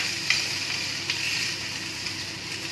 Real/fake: fake